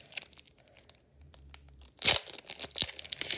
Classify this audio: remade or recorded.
recorded